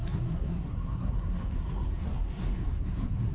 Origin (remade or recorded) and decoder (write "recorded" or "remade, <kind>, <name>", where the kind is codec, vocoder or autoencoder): remade, codec, SNAC